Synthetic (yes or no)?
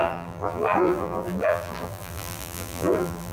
yes